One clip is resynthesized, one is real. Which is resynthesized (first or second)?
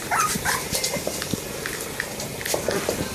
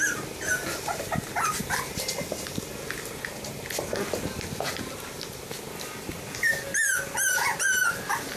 first